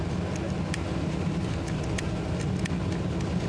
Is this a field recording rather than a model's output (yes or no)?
yes